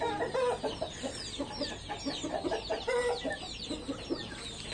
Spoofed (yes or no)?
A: no